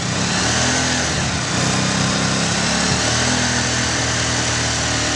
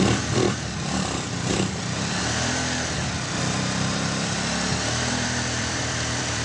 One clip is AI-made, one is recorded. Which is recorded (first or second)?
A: first